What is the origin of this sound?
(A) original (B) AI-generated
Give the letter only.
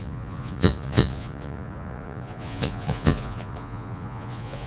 B